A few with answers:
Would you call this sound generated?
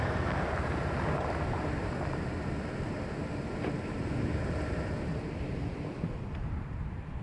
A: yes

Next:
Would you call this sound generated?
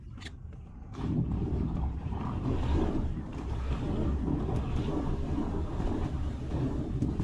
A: yes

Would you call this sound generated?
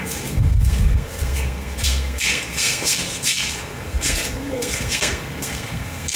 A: yes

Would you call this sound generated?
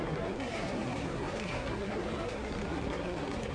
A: yes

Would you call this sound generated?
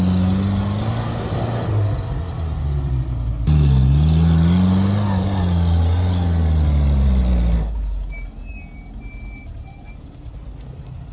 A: no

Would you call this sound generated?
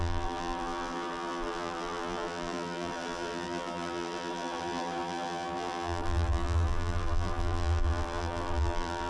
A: yes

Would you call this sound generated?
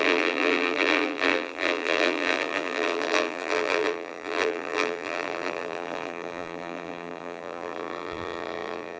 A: yes